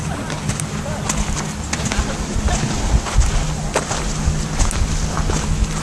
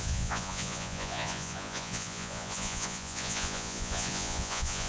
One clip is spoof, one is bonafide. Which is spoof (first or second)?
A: second